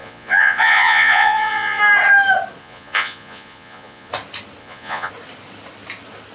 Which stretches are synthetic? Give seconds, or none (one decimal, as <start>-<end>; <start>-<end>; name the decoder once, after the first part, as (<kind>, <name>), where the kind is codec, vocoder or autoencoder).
0.0-1.8 (vocoder, Vocos); 2.6-4.1; 4.6-5.1